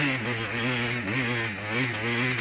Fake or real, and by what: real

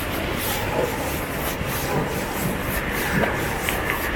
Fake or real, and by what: fake, vocoder, BigVGAN v2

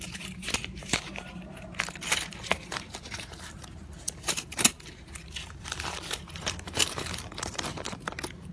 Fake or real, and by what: fake, vocoder, BigVGAN v2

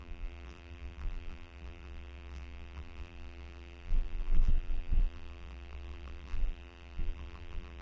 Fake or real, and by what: fake, vocoder, BigVGAN v2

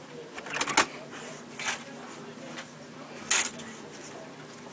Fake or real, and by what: real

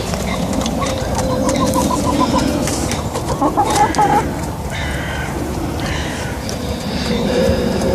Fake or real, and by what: fake, vocoder, BigVGAN v2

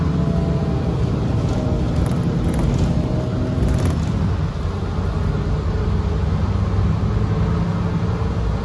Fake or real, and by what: real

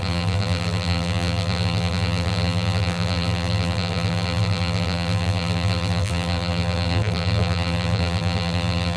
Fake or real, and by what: fake, vocoder, BigVGAN v2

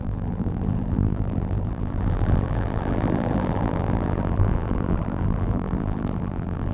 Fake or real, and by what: fake, vocoder, BigVGAN v2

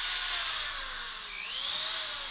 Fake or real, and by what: real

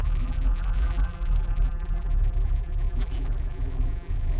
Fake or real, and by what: fake, vocoder, BigVGAN v2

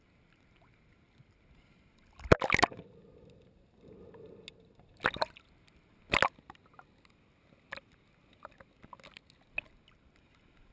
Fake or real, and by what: real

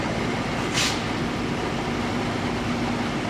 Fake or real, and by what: real